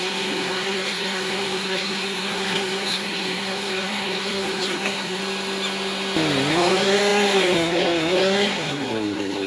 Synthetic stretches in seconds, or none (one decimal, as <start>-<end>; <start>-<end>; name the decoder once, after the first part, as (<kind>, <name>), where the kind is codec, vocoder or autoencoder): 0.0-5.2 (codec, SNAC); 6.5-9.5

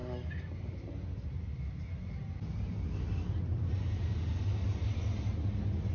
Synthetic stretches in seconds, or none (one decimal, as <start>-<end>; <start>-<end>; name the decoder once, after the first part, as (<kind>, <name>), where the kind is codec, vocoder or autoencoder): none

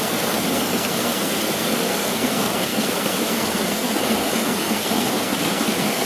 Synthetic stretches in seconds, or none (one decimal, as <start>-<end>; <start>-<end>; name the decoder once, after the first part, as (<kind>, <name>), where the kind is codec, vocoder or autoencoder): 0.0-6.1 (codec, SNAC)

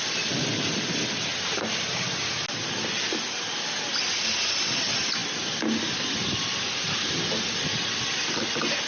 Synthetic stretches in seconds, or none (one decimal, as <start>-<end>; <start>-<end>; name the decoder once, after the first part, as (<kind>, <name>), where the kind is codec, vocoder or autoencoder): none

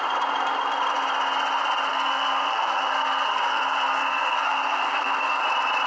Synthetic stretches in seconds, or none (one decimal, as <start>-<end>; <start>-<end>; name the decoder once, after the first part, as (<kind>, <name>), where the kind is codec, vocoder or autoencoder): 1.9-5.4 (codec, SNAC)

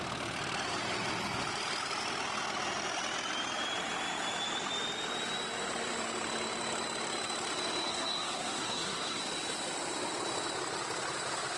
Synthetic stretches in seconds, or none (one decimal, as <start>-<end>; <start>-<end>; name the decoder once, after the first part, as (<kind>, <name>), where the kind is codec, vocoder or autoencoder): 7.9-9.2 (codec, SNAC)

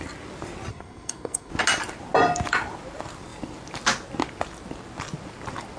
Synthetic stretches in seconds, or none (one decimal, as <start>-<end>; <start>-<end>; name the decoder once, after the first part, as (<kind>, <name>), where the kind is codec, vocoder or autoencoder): 0.7-1.5 (codec, SNAC)

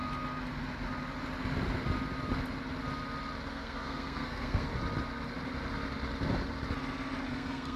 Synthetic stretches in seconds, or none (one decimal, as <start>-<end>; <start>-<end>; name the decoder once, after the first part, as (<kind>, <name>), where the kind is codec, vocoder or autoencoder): 3.5-4.7 (codec, SNAC); 7.3-7.8